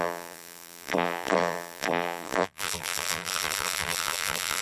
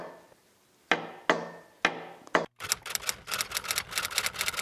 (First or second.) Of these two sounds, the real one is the second